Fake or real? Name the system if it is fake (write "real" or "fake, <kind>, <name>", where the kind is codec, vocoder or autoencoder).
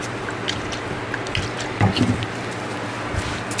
real